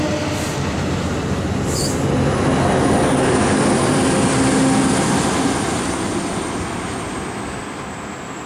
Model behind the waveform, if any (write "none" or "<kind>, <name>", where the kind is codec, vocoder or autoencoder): none